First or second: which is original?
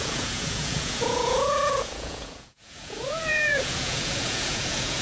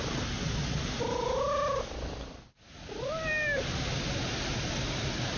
second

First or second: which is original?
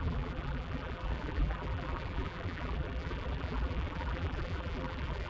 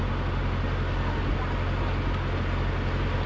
second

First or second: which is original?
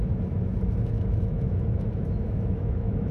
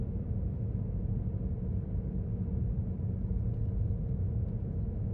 second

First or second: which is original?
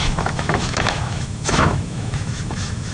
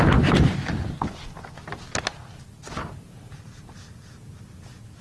second